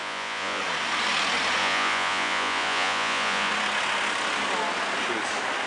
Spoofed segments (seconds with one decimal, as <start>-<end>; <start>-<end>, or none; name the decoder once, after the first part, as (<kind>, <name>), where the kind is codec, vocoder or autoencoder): 0.0-0.6 (vocoder, Vocos); 1.6-3.5